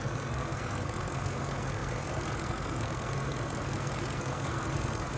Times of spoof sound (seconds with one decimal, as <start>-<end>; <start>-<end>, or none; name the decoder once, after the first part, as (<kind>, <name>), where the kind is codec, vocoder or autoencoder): 0.0-5.2 (codec, SNAC)